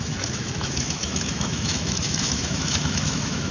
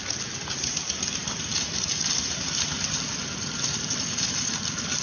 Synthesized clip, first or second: first